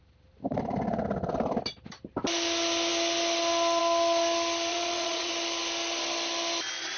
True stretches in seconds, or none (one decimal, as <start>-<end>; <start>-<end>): 0.0-4.7; 5.3-7.0